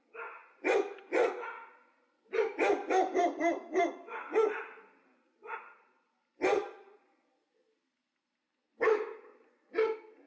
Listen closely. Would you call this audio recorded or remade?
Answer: recorded